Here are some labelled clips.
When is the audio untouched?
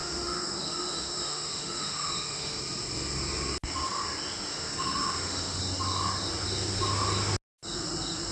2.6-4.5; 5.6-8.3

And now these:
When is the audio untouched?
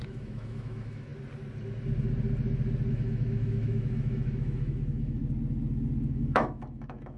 1.1-2.9; 5.2-6.1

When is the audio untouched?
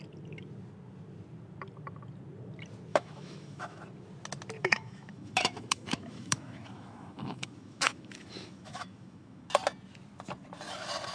0.0-2.9; 3.8-4.6; 9.5-11.1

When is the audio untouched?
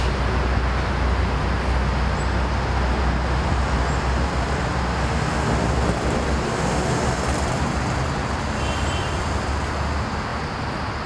0.0-11.1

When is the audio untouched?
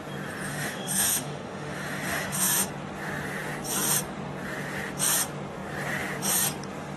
0.0-0.5; 2.7-7.0